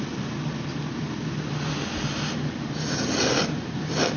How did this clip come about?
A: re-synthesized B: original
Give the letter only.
B